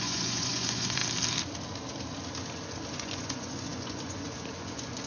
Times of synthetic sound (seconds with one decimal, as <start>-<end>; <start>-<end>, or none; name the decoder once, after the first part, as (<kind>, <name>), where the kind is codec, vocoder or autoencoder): 0.0-1.0 (vocoder, Vocos); 2.9-5.1